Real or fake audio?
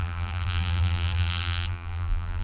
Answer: fake